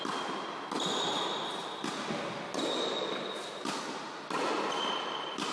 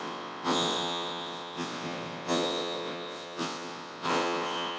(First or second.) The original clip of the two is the first